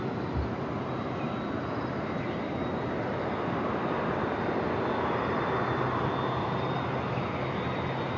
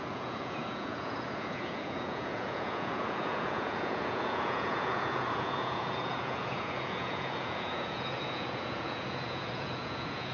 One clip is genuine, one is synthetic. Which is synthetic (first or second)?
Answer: second